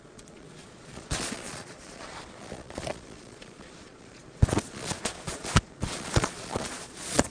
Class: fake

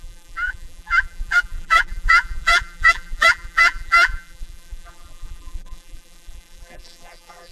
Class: fake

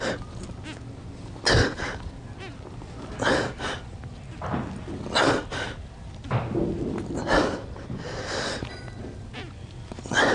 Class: real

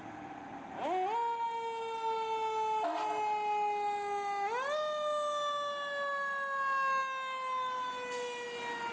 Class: real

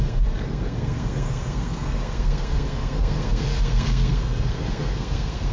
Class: fake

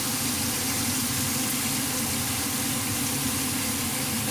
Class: real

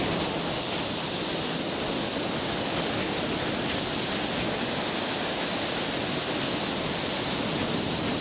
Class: real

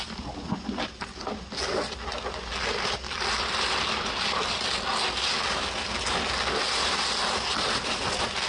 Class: real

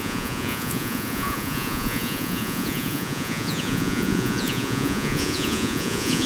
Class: fake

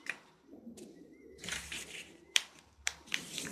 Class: fake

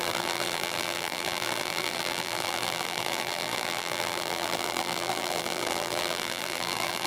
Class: fake